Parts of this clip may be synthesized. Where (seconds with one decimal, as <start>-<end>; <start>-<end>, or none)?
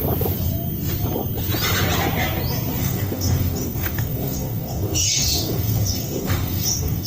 2.8-7.1